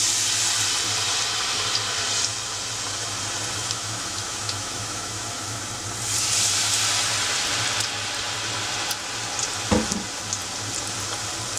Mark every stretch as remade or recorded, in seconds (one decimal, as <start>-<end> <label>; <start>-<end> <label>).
0.0-3.6 recorded; 3.6-5.6 remade; 5.6-11.6 recorded